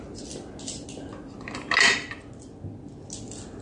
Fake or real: real